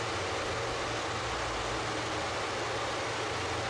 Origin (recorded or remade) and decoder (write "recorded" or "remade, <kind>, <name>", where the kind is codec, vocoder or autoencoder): recorded